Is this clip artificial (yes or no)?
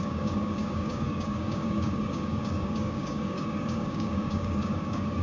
yes